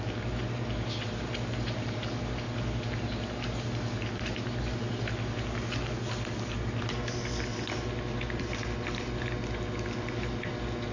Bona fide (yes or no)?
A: yes